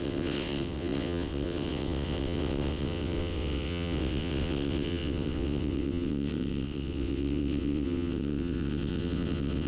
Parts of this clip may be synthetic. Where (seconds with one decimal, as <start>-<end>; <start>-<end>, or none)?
0.0-9.7